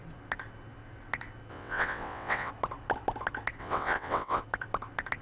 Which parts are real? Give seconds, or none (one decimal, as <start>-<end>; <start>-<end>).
0.0-1.5; 2.5-3.6; 4.4-5.2